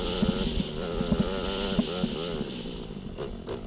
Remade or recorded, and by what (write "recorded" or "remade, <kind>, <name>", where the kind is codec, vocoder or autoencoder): recorded